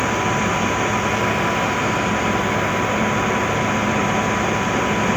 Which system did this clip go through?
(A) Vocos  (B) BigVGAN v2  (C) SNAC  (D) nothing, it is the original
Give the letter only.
D